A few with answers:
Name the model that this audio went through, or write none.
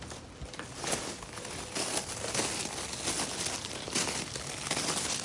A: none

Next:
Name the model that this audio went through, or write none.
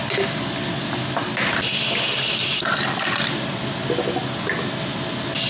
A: none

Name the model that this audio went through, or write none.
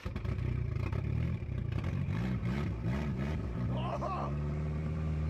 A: vocoder, BigVGAN v2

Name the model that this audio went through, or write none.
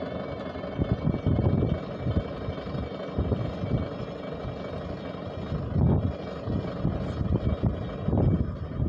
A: none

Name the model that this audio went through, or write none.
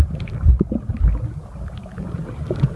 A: none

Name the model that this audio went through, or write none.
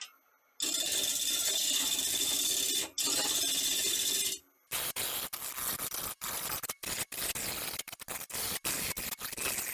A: none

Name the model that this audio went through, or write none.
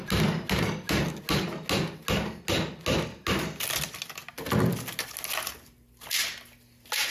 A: none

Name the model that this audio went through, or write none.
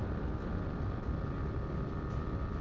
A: none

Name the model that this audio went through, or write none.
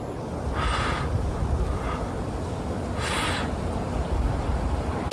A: none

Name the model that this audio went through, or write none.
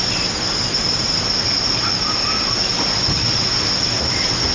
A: none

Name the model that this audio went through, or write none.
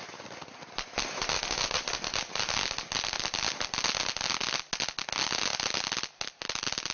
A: none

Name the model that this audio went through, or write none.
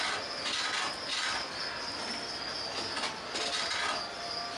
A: none